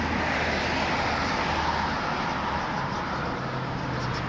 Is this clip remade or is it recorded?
recorded